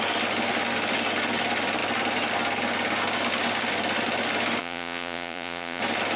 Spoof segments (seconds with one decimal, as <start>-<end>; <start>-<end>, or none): 4.6-5.8